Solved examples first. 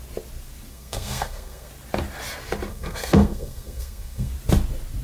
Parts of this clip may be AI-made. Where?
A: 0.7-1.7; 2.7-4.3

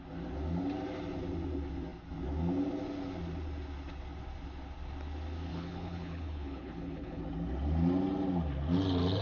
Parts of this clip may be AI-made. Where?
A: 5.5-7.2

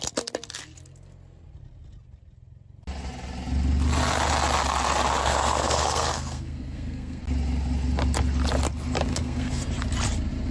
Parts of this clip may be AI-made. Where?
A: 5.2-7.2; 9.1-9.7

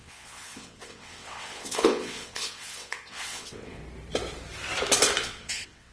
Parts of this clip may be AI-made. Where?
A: 0.0-3.8; 5.2-5.9

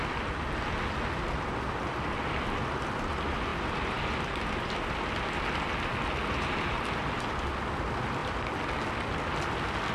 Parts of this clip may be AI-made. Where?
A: none

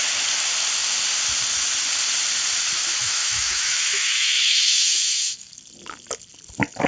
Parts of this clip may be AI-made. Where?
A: 3.0-5.5